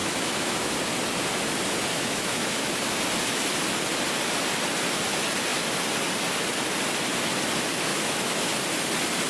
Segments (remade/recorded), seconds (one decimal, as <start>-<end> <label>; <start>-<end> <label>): 0.0-0.7 remade; 0.7-1.9 recorded; 1.9-2.7 remade; 2.7-7.9 recorded; 7.9-8.5 remade; 8.5-9.3 recorded

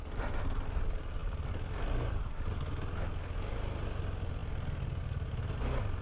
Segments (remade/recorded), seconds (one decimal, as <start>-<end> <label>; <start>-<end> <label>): 0.0-6.0 recorded

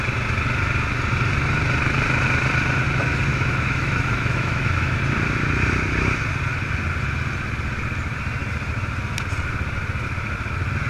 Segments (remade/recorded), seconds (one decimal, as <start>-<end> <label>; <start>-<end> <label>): 0.0-3.3 recorded; 3.3-5.0 remade; 5.0-10.9 recorded